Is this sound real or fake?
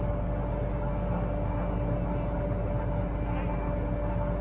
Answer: real